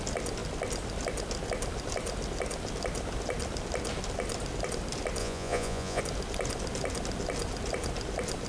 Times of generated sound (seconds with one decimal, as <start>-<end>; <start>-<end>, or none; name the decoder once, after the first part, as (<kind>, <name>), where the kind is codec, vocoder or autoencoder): 5.2-6.0 (vocoder, Vocos)